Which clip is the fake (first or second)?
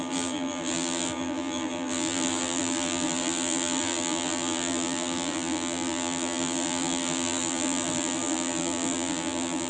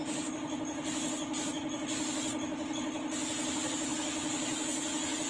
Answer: first